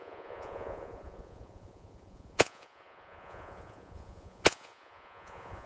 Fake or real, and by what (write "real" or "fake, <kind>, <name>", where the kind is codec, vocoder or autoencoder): fake, vocoder, Vocos